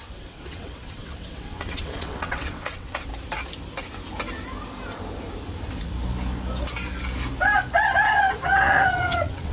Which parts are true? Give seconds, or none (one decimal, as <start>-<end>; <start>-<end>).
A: 3.1-8.1